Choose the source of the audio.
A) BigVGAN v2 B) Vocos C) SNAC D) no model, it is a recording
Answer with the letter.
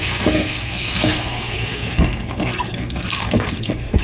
C